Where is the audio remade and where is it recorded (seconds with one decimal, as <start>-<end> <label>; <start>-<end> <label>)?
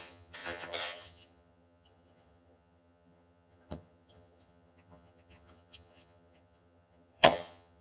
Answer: 0.0-7.8 remade